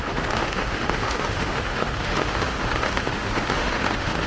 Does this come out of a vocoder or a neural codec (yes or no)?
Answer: yes